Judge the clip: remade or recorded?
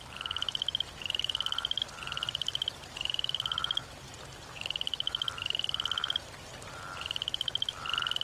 recorded